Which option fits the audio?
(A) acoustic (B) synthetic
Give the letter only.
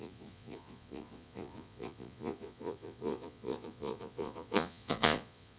B